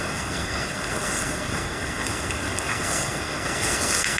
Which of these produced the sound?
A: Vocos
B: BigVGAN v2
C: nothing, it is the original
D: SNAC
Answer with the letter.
D